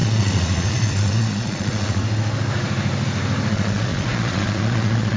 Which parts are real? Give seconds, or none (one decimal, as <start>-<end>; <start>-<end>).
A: 2.0-3.5